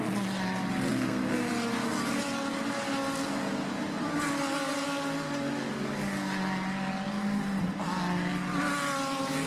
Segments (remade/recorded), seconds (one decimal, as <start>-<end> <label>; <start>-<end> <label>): 0.0-0.9 recorded; 0.9-1.5 remade; 1.5-9.5 recorded